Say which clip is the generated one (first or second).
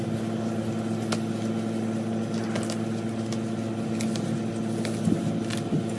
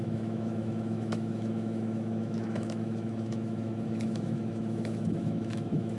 second